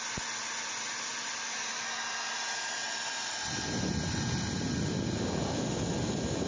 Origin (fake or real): real